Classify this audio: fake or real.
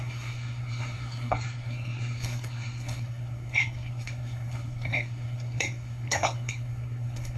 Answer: fake